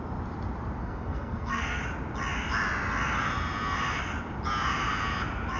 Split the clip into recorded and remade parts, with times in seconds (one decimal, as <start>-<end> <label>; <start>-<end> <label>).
0.0-0.8 recorded; 0.8-1.8 remade; 1.8-5.6 recorded